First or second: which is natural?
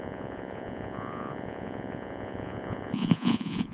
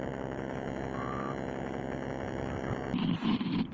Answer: second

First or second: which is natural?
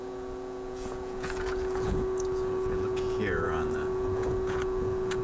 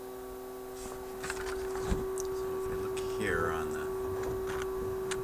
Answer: second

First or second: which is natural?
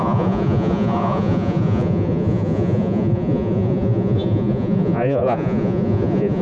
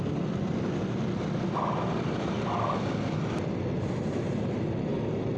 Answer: second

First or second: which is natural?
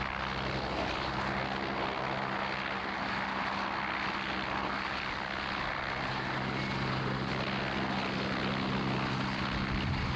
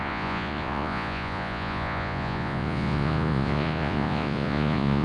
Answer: first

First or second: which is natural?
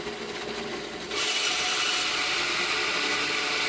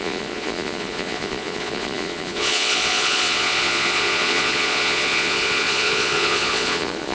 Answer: first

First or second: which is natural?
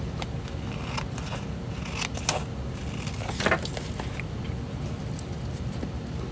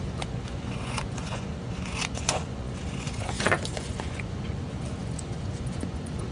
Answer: first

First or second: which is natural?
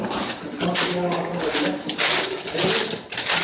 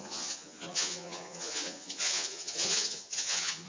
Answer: first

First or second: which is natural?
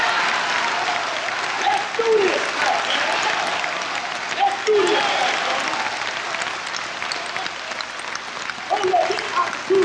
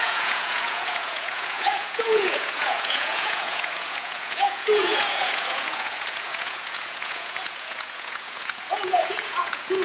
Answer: first